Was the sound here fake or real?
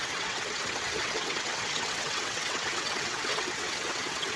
fake